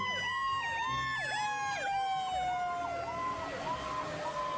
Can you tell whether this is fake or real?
real